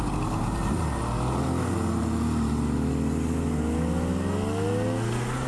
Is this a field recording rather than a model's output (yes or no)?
yes